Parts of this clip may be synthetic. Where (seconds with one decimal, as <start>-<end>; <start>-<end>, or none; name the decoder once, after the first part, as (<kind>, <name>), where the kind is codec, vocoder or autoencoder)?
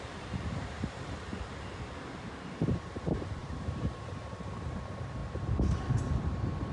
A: 0.0-1.3 (vocoder, BigVGAN v2); 2.2-5.2; 6.2-6.7